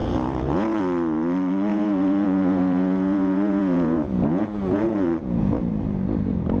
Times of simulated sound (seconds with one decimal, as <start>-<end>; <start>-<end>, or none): 0.0-0.8; 1.7-5.7